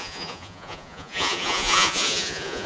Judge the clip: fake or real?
fake